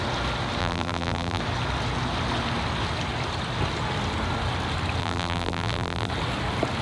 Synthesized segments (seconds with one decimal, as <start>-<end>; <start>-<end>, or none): 0.6-1.4; 5.0-6.1